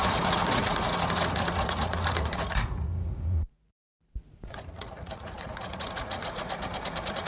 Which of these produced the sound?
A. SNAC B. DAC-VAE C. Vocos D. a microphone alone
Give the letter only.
C